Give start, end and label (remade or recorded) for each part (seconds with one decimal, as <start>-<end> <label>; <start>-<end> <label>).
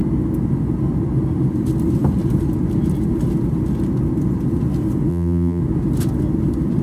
0.0-5.1 recorded; 5.1-5.6 remade; 5.6-6.8 recorded